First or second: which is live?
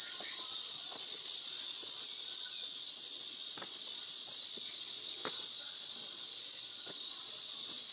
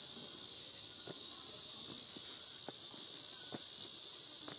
second